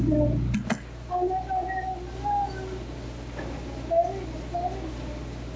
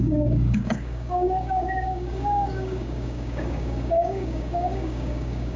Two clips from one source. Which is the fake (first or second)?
second